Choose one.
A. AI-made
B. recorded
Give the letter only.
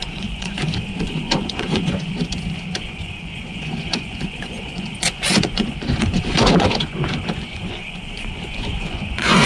A